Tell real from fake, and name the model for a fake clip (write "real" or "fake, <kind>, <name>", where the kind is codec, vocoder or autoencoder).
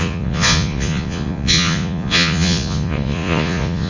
fake, vocoder, Vocos